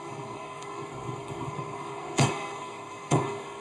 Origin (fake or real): fake